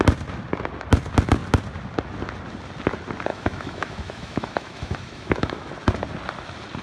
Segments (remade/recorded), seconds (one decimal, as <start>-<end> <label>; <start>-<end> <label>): 0.0-3.3 recorded; 3.3-5.7 remade; 5.7-6.8 recorded

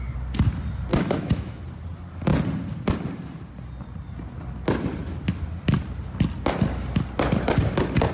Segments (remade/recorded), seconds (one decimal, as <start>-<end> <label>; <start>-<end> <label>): 0.0-0.9 recorded; 0.9-1.6 remade; 1.6-8.1 recorded

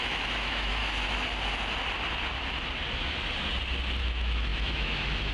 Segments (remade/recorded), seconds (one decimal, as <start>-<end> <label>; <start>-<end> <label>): 0.0-0.8 remade; 0.8-4.0 recorded; 4.0-5.3 remade